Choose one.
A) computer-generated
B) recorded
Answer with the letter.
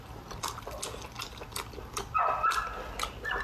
B